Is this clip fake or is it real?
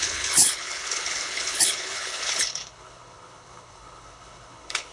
fake